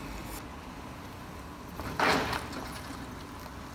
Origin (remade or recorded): recorded